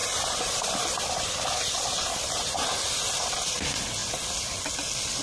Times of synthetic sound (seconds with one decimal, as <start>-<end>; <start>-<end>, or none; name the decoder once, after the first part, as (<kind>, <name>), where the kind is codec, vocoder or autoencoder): 0.0-1.2 (vocoder, BigVGAN v2)